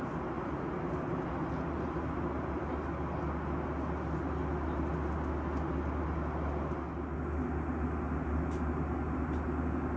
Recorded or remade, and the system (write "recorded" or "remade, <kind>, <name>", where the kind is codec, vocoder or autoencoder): recorded